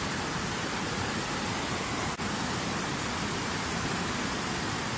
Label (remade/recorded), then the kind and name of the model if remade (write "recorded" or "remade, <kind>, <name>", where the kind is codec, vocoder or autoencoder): recorded